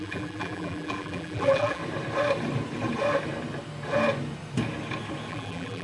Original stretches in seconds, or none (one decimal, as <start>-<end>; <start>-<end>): 1.8-5.3